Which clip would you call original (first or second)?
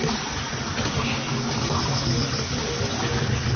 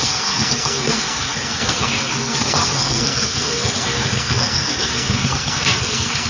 first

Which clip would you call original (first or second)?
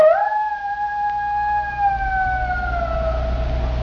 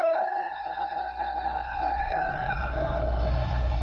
first